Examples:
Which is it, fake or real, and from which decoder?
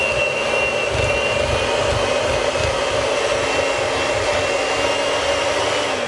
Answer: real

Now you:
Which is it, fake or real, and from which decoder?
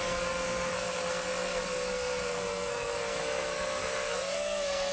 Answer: fake, codec, SNAC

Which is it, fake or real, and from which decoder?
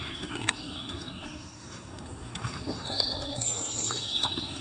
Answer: fake, codec, SNAC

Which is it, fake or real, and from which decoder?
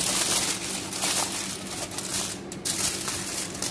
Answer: real